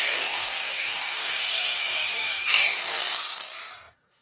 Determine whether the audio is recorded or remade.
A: remade